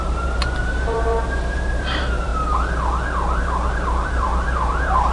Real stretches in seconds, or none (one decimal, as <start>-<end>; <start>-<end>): 2.3-3.4